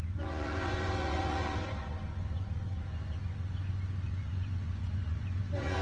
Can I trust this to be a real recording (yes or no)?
no